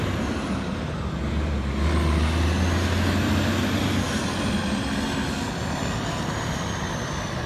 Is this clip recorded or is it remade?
recorded